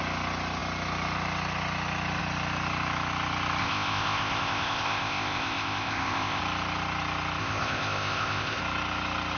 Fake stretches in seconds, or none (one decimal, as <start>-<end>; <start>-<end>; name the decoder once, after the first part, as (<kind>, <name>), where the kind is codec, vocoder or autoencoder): 3.6-6.4 (codec, ZipCodec); 7.4-8.6